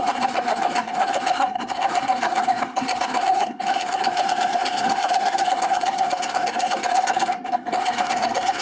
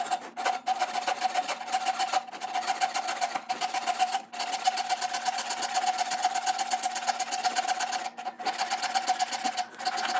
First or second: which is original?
second